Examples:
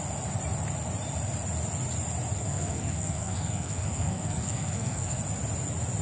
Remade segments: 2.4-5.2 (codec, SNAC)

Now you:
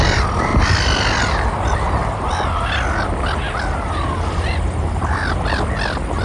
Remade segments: none